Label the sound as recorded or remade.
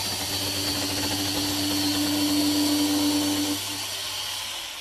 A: recorded